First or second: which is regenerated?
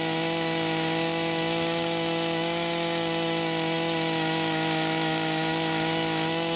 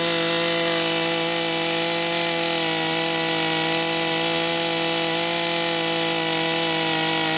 first